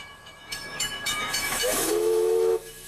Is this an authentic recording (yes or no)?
no